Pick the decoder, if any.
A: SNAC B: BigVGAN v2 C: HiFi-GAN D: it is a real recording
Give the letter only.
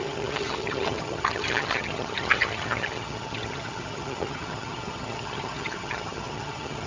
C